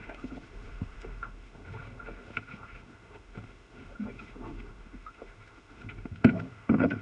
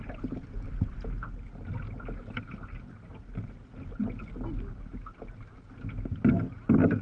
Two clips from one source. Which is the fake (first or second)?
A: first